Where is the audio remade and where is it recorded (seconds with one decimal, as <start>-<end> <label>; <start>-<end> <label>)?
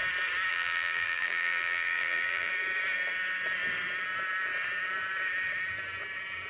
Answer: 0.0-0.5 recorded; 0.5-2.5 remade; 2.5-6.5 recorded